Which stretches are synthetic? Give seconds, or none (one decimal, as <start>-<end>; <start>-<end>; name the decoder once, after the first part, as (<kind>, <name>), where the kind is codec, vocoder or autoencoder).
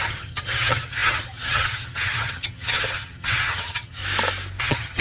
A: 0.0-4.0 (vocoder, HiFi-GAN); 4.6-5.0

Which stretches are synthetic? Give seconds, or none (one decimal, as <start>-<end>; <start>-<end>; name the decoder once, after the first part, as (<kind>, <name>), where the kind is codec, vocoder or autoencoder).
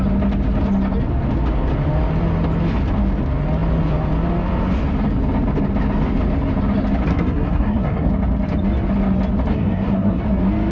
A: 7.1-8.1 (codec, SNAC); 9.5-10.2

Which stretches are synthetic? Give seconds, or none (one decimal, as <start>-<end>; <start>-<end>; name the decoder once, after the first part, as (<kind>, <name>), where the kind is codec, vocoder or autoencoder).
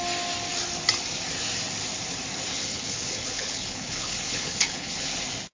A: 2.5-5.1 (codec, HILCodec)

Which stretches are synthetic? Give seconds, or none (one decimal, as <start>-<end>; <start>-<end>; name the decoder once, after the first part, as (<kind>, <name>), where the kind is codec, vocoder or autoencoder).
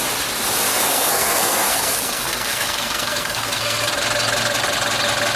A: 0.7-3.9 (codec, SNAC)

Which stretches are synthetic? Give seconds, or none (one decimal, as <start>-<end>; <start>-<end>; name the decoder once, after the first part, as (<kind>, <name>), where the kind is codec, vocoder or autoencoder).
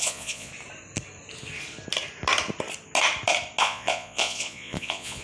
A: 0.0-0.5 (vocoder, Vocos); 3.6-5.2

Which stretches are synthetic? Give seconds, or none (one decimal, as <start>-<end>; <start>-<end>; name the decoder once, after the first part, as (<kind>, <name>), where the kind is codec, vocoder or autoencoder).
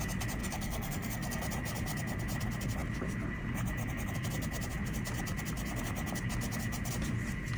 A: 0.4-1.4 (codec, SNAC)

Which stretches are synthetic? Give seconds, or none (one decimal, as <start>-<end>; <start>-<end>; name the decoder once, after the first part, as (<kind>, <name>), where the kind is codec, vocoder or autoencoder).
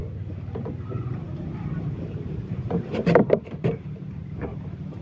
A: 0.8-5.0 (vocoder, BigVGAN v2)